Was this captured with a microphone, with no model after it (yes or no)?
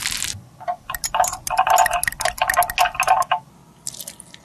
yes